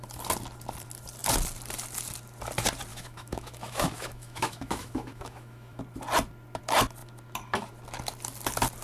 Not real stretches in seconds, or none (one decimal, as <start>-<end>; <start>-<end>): 2.9-5.8

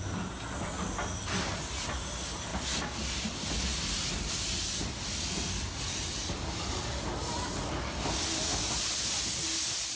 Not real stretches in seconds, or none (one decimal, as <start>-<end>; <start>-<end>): none